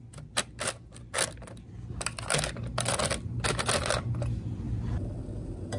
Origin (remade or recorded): recorded